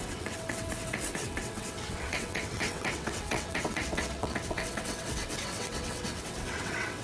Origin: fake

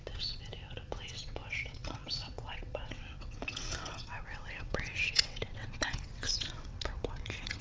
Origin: fake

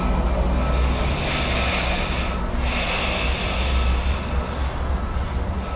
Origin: real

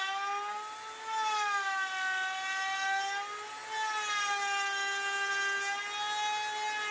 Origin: real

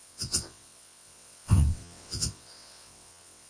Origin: fake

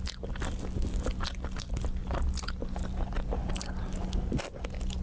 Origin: real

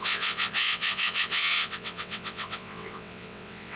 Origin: fake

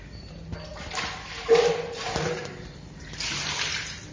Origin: real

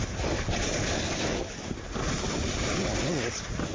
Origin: real